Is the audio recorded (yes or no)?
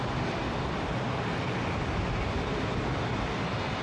yes